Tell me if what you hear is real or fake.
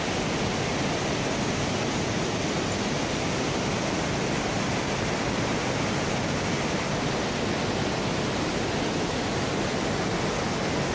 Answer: real